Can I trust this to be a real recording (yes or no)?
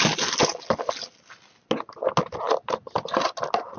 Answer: yes